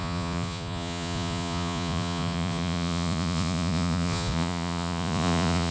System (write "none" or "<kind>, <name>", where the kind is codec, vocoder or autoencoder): vocoder, Vocos